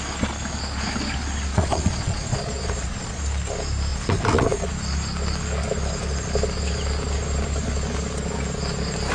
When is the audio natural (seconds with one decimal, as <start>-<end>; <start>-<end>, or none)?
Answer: 0.0-1.5; 3.2-3.9; 4.7-9.1